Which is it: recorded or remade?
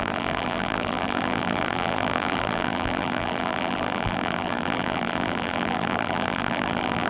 remade